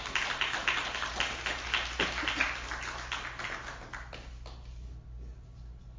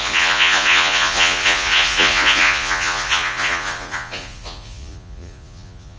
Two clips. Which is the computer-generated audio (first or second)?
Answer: second